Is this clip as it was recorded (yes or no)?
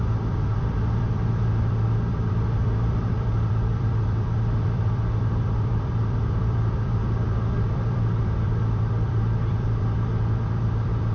no